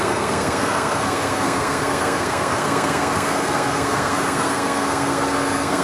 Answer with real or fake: fake